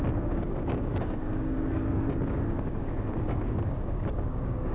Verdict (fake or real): fake